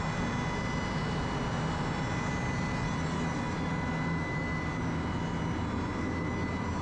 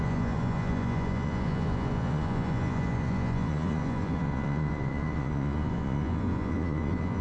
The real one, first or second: first